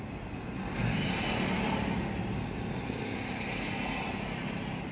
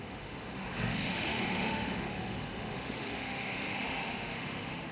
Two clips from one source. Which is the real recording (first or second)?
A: first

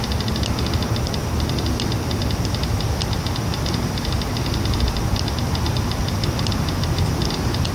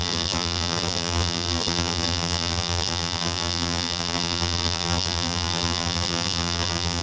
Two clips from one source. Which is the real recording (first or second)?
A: first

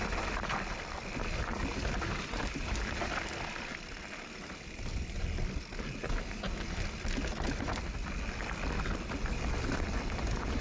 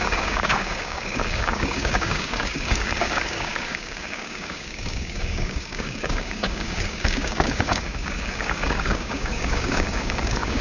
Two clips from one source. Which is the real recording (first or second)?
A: first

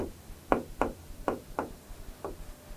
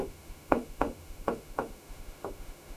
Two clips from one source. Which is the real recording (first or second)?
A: first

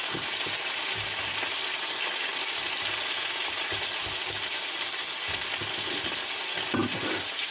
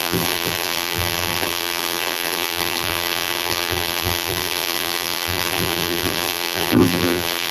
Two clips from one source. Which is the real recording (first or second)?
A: first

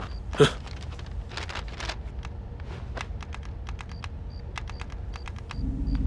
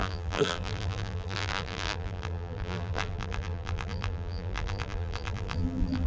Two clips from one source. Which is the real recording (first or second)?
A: first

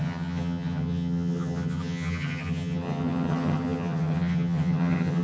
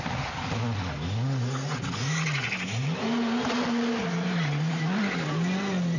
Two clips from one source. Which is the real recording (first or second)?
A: second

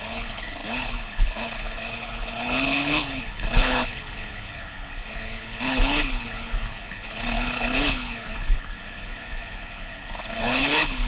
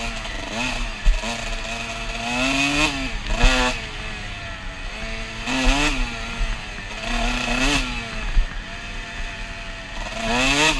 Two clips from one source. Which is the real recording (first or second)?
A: second